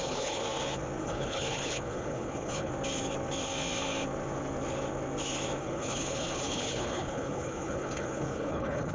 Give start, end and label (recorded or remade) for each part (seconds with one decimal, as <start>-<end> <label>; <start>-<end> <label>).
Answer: 0.0-0.4 remade; 0.4-1.0 recorded; 1.0-2.7 remade; 2.7-5.6 recorded; 5.6-8.9 remade